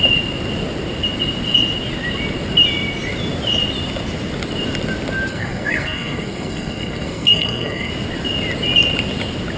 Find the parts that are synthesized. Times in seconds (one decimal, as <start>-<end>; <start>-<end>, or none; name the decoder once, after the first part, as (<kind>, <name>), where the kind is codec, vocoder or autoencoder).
5.3-7.9 (codec, SNAC)